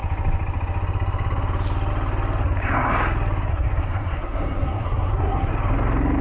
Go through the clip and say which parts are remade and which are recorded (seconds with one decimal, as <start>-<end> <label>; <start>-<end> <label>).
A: 0.0-3.5 recorded; 3.5-5.5 remade; 5.5-6.2 recorded